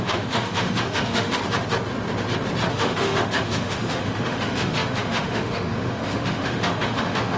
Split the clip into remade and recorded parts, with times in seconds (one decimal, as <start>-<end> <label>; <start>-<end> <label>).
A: 0.0-1.4 remade; 1.4-2.7 recorded; 2.7-7.4 remade